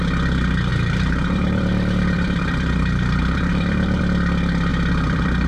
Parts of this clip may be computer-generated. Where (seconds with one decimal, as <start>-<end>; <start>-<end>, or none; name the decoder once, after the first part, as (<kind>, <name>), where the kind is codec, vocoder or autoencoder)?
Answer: 0.7-4.0 (vocoder, BigVGAN v2); 4.7-5.5